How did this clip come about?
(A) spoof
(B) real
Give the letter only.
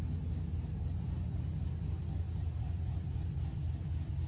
B